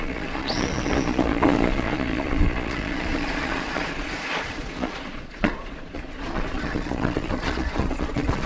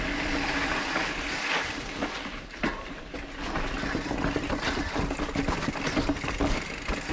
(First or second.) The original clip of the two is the second